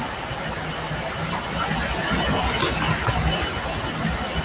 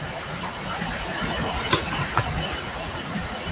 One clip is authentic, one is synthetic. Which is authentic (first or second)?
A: first